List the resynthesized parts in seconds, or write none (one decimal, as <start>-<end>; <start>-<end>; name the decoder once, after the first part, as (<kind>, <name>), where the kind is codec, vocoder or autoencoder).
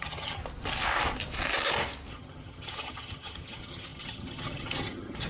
0.0-0.4 (vocoder, HiFi-GAN); 2.1-5.3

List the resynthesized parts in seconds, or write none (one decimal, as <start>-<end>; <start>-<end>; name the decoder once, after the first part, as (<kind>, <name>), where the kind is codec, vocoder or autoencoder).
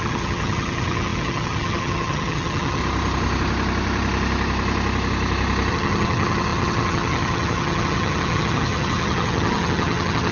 0.0-2.8 (vocoder, HiFi-GAN); 5.7-10.3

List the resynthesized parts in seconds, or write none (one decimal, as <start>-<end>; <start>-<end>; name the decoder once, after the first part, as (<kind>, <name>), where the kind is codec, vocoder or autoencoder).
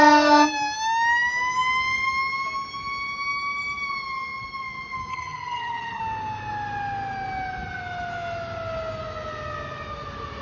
5.1-6.0 (vocoder, HiFi-GAN)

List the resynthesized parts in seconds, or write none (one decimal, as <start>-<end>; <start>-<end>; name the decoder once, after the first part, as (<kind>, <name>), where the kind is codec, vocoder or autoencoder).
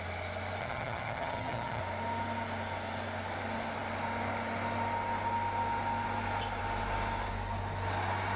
0.6-1.8 (vocoder, HiFi-GAN)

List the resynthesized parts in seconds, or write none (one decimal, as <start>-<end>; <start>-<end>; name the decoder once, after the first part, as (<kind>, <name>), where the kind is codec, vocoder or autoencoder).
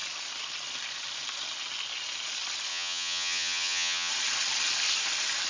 2.7-4.1 (vocoder, HiFi-GAN)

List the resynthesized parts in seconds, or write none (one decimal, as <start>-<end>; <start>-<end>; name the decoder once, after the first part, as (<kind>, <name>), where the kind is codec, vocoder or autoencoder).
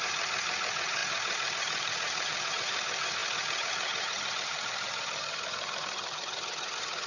0.0-7.1 (vocoder, HiFi-GAN)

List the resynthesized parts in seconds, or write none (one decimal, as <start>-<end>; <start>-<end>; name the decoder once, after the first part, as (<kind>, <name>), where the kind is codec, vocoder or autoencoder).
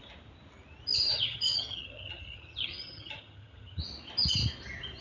1.1-3.8 (vocoder, HiFi-GAN)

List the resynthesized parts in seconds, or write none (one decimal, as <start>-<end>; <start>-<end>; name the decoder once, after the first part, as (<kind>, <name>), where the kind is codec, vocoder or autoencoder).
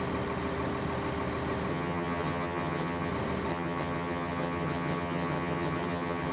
1.7-3.1 (vocoder, HiFi-GAN); 3.5-6.3